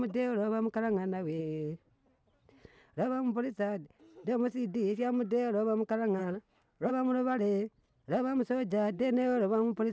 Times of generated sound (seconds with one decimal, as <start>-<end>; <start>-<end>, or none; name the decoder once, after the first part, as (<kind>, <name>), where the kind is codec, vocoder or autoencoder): 1.4-1.9 (codec, SNAC); 6.2-6.9